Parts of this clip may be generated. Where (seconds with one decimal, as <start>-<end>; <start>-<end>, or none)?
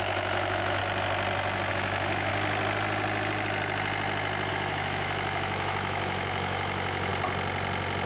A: 0.0-0.8; 1.7-2.3; 4.5-7.1